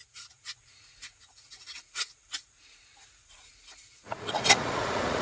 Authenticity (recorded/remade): remade